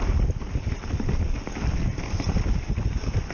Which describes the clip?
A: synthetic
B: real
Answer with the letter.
B